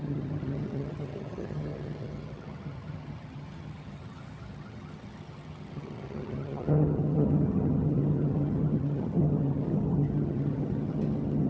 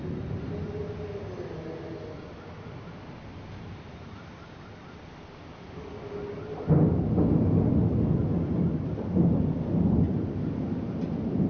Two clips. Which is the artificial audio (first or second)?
first